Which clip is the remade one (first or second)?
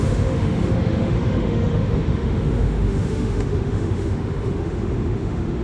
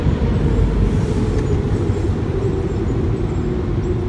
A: first